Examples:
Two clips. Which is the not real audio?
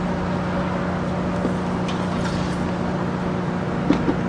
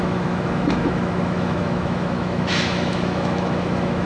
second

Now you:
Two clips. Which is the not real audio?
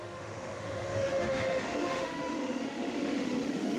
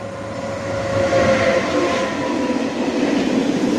first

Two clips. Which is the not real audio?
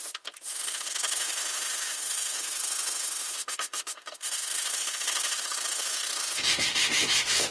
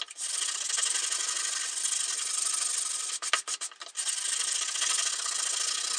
first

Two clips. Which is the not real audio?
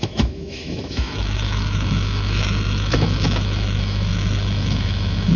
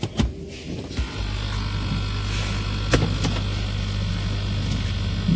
first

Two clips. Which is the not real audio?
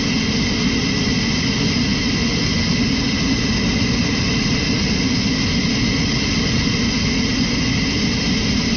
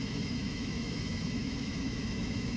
second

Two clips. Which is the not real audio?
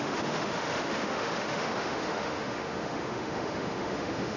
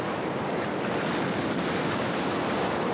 first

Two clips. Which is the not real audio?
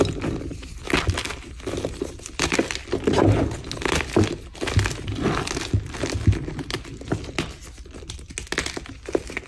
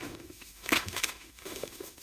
second